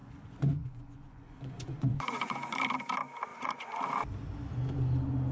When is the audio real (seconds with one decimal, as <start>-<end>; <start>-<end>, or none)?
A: 2.6-3.3; 3.8-5.3